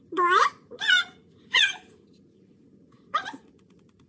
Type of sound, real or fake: fake